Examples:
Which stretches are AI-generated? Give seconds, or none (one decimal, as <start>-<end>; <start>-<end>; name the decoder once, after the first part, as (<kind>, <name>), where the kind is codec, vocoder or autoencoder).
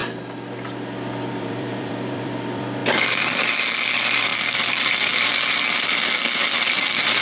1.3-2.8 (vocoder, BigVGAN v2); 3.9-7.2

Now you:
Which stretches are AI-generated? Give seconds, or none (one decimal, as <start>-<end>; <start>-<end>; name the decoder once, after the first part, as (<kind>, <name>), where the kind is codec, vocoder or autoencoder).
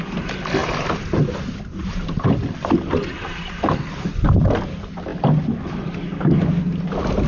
0.6-3.8 (vocoder, BigVGAN v2)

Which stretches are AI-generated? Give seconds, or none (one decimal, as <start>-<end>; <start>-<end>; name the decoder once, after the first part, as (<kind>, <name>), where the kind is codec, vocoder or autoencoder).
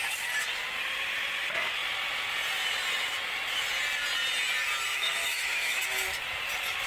4.9-5.8 (autoencoder, DAC-VAE)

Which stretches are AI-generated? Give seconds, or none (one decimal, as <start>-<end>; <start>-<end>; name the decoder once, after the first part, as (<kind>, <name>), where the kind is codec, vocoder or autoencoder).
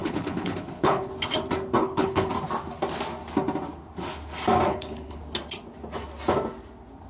0.0-1.1 (codec, HILCodec); 1.8-2.3; 4.7-5.2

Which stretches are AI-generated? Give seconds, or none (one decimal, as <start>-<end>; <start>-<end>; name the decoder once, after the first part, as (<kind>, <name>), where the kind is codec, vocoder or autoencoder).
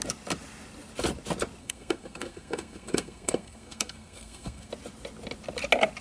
1.6-4.7 (codec, SNAC)